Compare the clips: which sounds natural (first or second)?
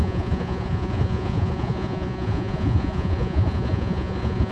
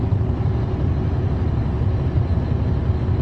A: second